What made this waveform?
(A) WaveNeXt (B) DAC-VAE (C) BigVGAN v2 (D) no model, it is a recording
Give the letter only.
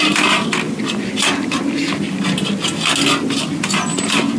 D